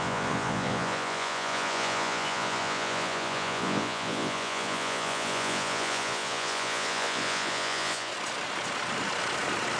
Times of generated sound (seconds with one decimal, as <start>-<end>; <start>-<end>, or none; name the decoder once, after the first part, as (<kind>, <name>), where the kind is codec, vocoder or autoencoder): 0.0-8.1 (vocoder, Vocos)